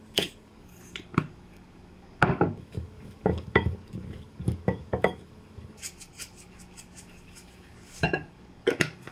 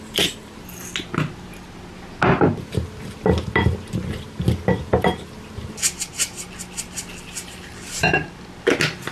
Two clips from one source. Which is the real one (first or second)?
second